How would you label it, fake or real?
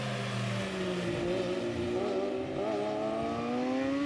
real